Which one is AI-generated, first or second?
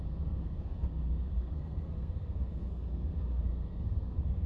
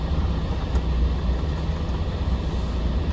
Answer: first